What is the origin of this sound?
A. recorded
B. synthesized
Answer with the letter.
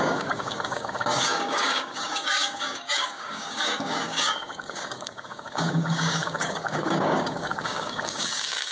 B